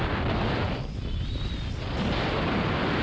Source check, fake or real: real